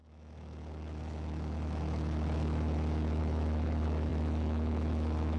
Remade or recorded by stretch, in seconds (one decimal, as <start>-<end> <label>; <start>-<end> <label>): 0.0-5.4 remade